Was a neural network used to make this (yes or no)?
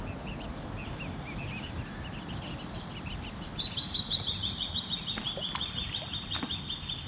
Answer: no